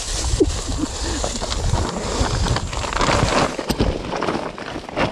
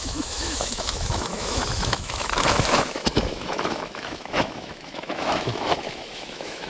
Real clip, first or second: first